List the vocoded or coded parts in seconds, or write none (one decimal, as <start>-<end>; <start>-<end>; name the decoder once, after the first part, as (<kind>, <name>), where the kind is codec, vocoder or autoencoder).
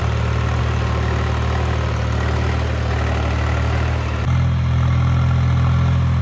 none